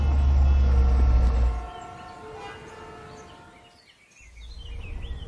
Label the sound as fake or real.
real